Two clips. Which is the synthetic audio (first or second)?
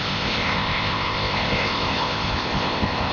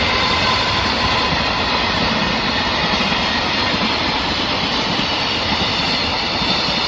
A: first